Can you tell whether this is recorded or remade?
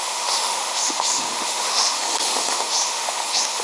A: remade